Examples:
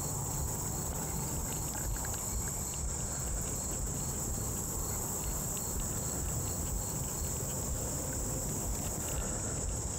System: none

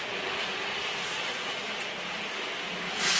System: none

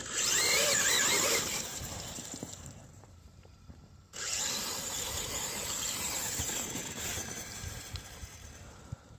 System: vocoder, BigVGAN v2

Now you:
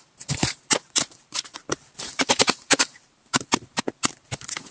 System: vocoder, BigVGAN v2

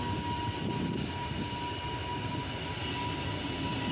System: none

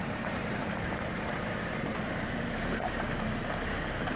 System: vocoder, BigVGAN v2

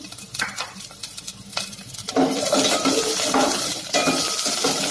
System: vocoder, BigVGAN v2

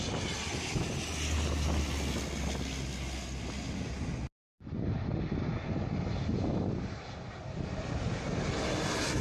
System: none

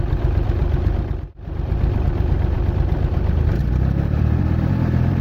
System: vocoder, BigVGAN v2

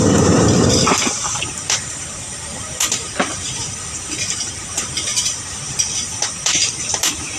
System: vocoder, BigVGAN v2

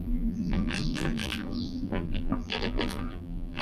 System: vocoder, BigVGAN v2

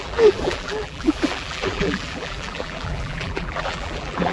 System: vocoder, BigVGAN v2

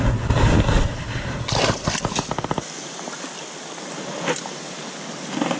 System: none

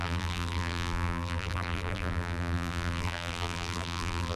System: vocoder, BigVGAN v2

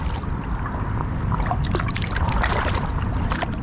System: none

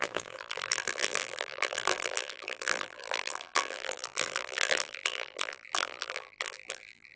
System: vocoder, BigVGAN v2